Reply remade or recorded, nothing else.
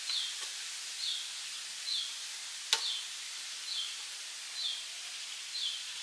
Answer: recorded